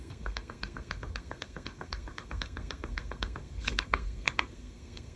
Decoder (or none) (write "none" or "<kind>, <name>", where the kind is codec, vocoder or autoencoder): codec, SNAC